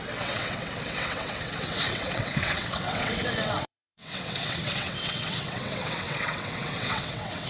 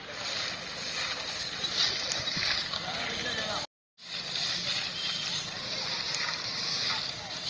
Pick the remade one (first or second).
first